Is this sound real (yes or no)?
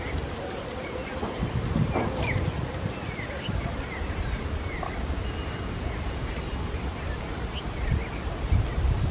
yes